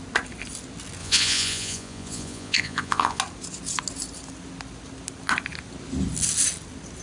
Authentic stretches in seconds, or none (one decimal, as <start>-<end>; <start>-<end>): 0.0-1.0; 3.2-7.0